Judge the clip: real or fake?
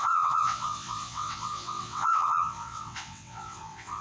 fake